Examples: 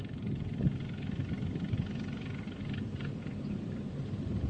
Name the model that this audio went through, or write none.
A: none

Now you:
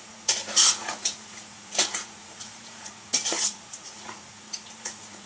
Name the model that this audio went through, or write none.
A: vocoder, Vocos